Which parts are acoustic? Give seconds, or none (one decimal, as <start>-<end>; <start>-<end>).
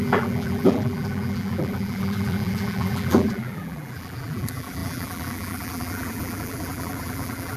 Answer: none